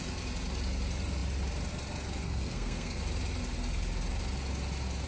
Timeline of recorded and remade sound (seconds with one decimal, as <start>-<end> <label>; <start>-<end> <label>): 0.0-2.2 recorded; 2.2-3.0 remade; 3.0-5.1 recorded